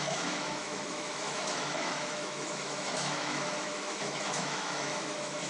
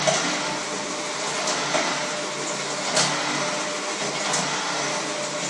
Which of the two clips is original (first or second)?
second